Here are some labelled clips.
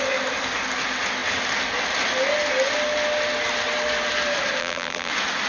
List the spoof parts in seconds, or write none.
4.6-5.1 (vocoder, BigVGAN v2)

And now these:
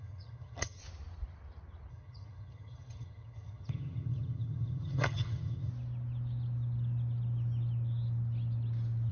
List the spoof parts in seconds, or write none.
0.0-0.8 (vocoder, HiFi-GAN); 1.9-5.7

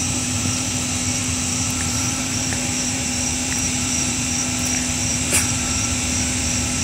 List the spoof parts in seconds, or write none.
0.0-0.7 (vocoder, BigVGAN v2); 1.2-4.4; 5.1-6.8

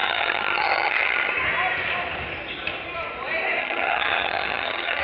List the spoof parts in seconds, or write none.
0.0-1.3 (vocoder, HiFi-GAN); 3.6-5.0